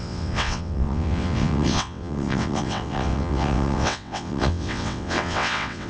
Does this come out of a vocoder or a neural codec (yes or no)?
yes